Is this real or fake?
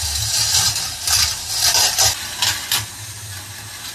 real